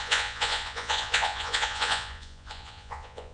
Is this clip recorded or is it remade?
remade